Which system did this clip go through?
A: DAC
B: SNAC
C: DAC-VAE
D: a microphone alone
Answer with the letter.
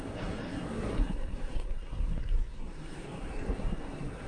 B